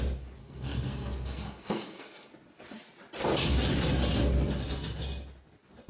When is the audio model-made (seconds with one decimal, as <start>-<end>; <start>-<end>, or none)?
0.4-2.3